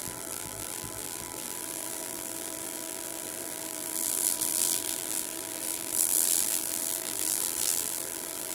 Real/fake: fake